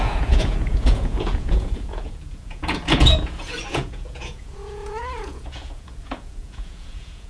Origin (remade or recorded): remade